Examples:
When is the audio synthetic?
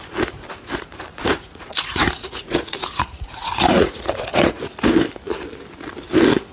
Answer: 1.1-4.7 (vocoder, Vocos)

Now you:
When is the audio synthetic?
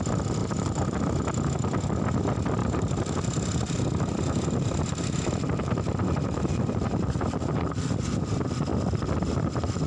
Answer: 0.4-1.0 (vocoder, BigVGAN v2); 2.6-7.8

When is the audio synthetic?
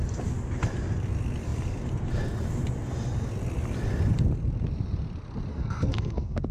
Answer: 5.5-6.5 (codec, SNAC)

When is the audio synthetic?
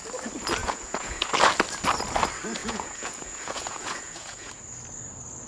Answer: 0.6-1.3 (vocoder, Vocos); 2.6-4.6